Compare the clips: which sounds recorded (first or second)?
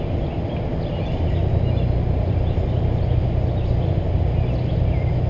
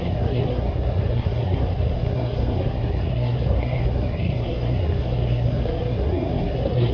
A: first